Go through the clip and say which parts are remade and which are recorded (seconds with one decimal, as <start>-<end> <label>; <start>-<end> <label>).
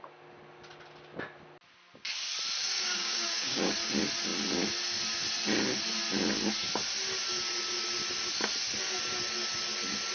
0.0-2.6 recorded; 2.6-3.7 remade; 3.7-10.1 recorded